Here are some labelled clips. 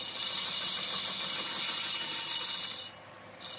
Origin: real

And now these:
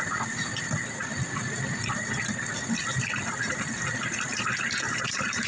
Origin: real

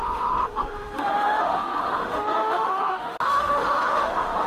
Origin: fake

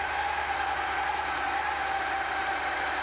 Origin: real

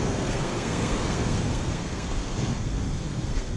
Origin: fake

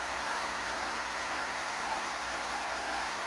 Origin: fake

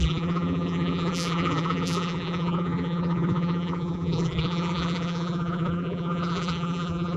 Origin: fake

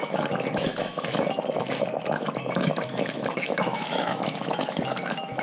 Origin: fake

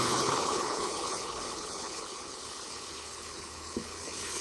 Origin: fake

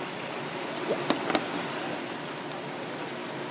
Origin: real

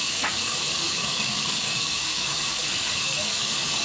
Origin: fake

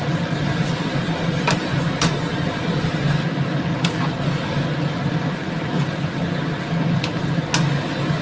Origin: real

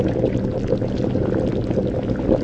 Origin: real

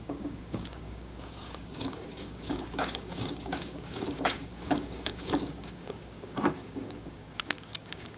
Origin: fake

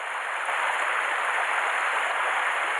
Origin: real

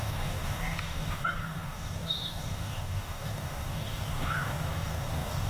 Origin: fake